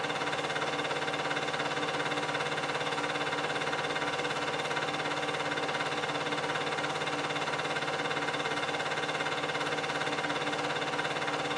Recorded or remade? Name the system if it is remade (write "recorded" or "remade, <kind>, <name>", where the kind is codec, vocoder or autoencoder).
recorded